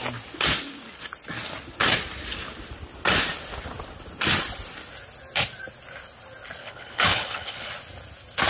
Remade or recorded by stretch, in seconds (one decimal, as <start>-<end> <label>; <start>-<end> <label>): 0.0-6.6 recorded; 6.6-7.7 remade; 7.7-8.5 recorded